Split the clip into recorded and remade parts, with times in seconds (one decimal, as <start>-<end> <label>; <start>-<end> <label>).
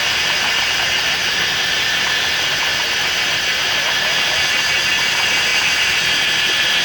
0.0-6.8 recorded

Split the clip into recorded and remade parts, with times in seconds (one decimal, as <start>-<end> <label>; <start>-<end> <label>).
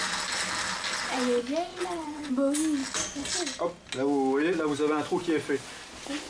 0.0-1.7 recorded; 1.7-2.3 remade; 2.3-6.3 recorded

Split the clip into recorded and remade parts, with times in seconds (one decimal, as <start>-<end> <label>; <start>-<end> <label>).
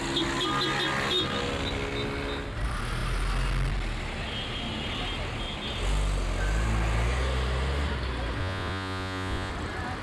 0.0-8.4 recorded; 8.4-9.5 remade; 9.5-10.0 recorded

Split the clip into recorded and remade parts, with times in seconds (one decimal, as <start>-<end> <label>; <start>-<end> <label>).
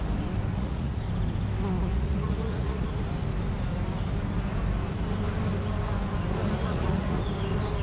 0.0-0.5 recorded; 0.5-1.0 remade; 1.0-1.9 recorded; 1.9-2.9 remade; 2.9-6.6 recorded; 6.6-7.2 remade; 7.2-7.8 recorded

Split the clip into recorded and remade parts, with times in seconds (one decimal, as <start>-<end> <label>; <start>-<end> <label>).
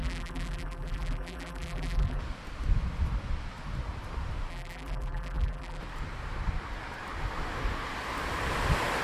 0.0-2.2 remade; 2.2-4.5 recorded; 4.5-5.8 remade; 5.8-9.0 recorded